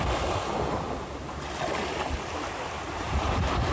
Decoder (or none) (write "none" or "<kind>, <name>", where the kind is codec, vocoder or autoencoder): none